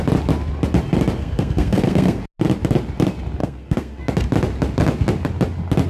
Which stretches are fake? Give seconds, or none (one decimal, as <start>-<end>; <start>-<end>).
1.2-2.2; 3.4-4.0

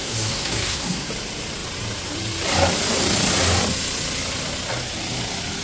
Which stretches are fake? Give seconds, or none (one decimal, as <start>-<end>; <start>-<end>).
0.0-1.1

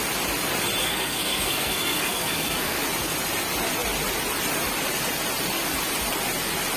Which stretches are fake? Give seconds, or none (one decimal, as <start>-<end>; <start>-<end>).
0.8-2.8